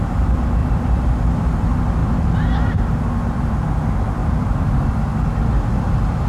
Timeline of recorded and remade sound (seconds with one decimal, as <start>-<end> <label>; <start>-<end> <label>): 0.0-0.6 recorded; 0.6-1.1 remade; 1.1-2.0 recorded; 2.0-3.0 remade; 3.0-4.2 recorded; 4.2-5.0 remade; 5.0-6.3 recorded